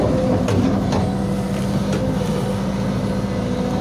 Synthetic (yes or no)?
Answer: no